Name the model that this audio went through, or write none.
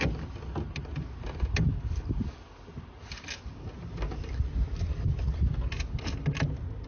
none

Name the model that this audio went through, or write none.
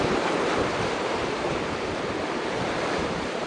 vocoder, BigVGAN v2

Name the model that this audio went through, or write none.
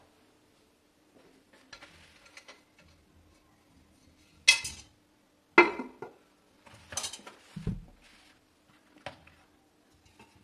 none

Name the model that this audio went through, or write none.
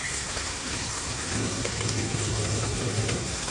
codec, SNAC